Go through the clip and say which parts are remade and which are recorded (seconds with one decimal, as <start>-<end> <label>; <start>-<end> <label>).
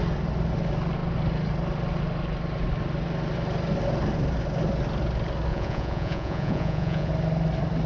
0.0-5.5 recorded; 5.5-7.1 remade; 7.1-7.9 recorded